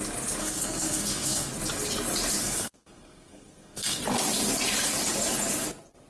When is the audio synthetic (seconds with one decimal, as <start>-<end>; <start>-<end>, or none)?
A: 0.4-1.5; 2.4-4.0